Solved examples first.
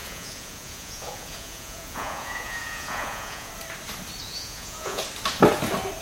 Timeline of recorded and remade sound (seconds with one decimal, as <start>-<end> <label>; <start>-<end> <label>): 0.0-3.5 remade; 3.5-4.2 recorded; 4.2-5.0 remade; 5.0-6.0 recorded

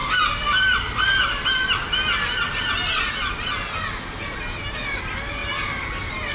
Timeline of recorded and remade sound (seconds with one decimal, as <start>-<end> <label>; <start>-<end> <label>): 0.0-6.3 recorded

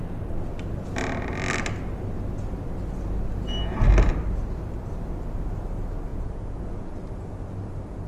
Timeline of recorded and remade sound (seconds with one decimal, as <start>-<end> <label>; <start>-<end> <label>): 0.0-6.1 recorded; 6.1-6.6 remade; 6.6-8.1 recorded

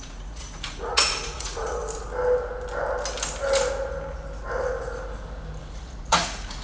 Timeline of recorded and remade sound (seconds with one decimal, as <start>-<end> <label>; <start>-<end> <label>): 0.0-1.8 remade; 1.8-5.6 recorded; 5.6-6.6 remade

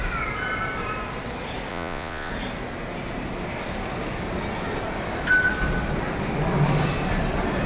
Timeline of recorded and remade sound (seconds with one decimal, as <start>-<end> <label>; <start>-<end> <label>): 0.0-1.7 recorded; 1.7-2.3 remade; 2.3-7.7 recorded